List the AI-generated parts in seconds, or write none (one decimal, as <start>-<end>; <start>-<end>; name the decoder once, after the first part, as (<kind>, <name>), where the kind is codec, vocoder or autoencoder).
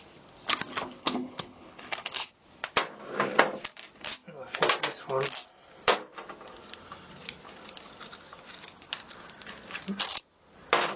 1.0-2.3 (codec, HILCodec)